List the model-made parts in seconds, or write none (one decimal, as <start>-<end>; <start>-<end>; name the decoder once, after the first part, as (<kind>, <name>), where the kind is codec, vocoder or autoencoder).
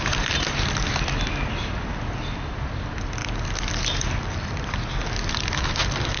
none